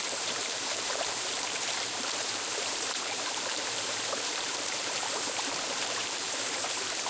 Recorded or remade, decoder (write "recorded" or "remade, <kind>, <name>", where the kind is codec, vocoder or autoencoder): remade, vocoder, BigVGAN v2